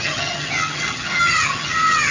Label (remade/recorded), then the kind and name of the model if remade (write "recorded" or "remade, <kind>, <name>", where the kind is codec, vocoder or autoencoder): remade, vocoder, HiFi-GAN